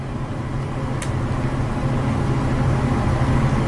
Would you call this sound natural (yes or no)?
yes